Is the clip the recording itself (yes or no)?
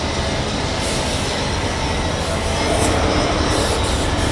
yes